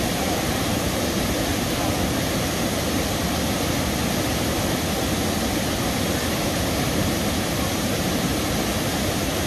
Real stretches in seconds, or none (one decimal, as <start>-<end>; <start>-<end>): 1.5-6.2; 8.3-9.0